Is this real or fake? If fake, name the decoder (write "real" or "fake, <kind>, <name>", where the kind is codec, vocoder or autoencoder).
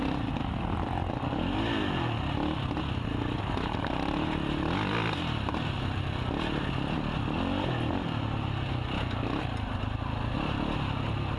real